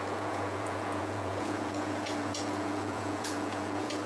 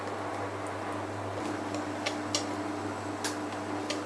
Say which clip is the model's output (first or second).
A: first